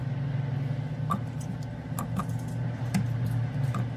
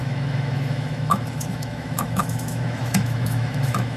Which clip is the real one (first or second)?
first